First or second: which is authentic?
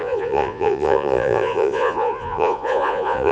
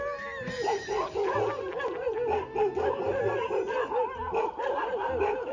second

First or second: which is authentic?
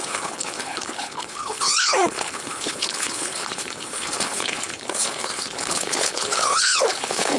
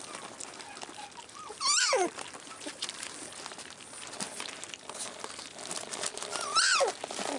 second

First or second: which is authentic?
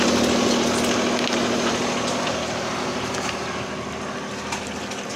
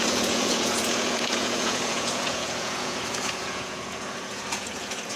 first